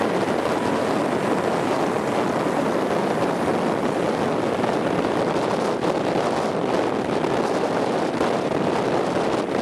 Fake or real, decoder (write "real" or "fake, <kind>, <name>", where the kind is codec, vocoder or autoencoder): real